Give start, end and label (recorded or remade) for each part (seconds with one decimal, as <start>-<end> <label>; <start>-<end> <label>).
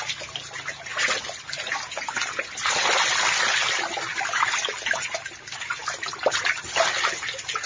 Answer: 0.0-7.7 recorded